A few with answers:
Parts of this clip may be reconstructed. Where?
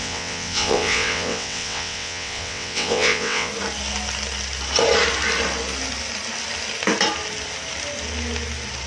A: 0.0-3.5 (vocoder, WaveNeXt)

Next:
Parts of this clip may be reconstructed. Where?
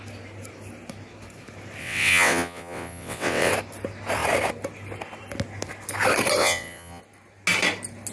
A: 1.8-3.5 (vocoder, WaveNeXt); 6.4-7.0